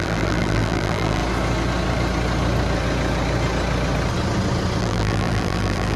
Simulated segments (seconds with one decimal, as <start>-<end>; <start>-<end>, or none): 0.0-1.2; 4.8-6.0